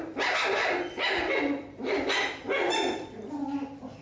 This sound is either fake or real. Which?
real